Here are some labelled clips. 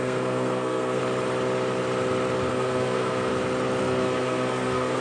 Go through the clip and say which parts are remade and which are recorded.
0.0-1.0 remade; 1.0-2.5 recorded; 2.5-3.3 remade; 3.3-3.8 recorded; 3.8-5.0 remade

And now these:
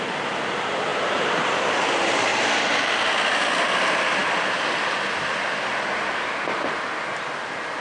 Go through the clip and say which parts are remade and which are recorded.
0.0-0.9 recorded; 0.9-1.6 remade; 1.6-2.3 recorded; 2.3-2.9 remade; 2.9-7.8 recorded

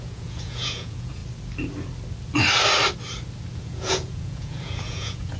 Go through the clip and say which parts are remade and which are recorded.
0.0-1.2 remade; 1.2-3.5 recorded; 3.5-5.4 remade

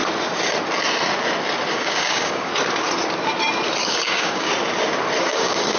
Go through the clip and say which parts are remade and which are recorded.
0.0-1.7 recorded; 1.7-2.5 remade; 2.5-3.8 recorded; 3.8-4.5 remade; 4.5-5.2 recorded; 5.2-5.8 remade

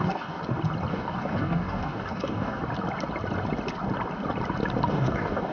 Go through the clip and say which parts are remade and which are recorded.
0.0-0.4 remade; 0.4-0.9 recorded; 0.9-2.6 remade; 2.6-4.9 recorded; 4.9-5.5 remade